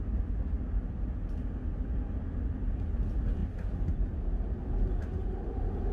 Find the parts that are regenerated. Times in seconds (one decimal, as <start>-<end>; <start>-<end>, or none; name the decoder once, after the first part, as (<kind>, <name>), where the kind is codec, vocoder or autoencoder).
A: 3.4-4.7 (vocoder, BigVGAN v2)